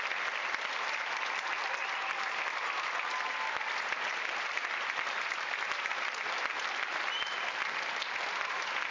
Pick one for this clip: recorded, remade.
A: recorded